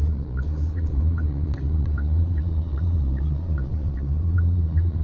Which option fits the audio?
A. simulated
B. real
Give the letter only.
A